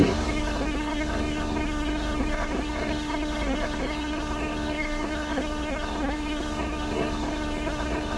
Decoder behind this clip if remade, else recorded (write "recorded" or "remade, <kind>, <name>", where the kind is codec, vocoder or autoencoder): remade, codec, SNAC